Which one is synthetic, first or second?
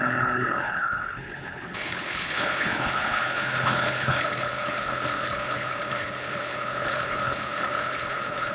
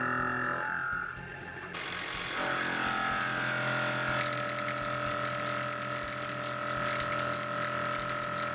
first